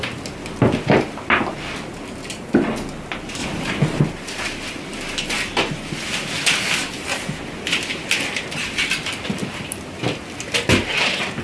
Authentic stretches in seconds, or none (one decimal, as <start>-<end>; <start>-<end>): 0.0-11.4